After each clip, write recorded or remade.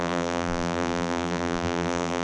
remade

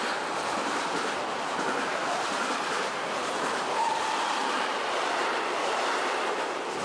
remade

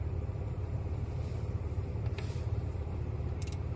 remade